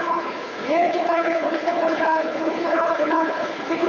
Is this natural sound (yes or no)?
no